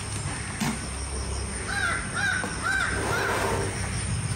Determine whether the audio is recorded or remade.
recorded